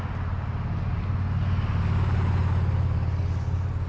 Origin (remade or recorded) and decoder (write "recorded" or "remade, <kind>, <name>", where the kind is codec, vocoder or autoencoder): recorded